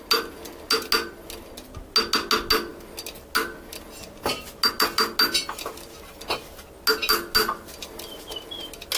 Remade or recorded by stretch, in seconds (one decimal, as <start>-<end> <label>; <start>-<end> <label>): 0.0-9.0 recorded